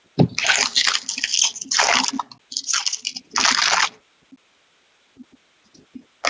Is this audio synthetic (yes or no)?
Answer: no